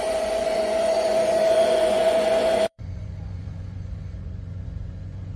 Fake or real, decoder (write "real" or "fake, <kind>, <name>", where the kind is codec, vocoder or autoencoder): fake, vocoder, Vocos